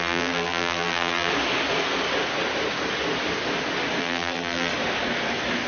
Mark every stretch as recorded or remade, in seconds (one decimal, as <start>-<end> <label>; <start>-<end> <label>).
0.0-1.3 remade; 1.3-4.0 recorded; 4.0-4.7 remade; 4.7-5.7 recorded